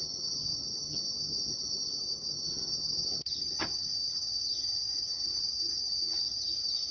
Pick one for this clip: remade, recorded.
remade